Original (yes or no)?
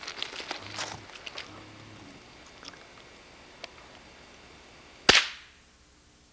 yes